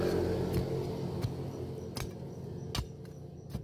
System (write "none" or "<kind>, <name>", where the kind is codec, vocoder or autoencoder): none